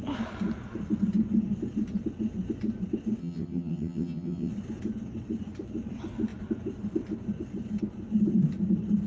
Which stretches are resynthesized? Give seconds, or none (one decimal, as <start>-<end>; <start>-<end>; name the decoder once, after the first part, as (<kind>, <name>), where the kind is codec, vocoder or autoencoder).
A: 3.2-4.5 (vocoder, HiFi-GAN)